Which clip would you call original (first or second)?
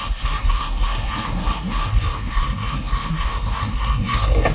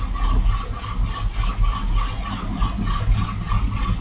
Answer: second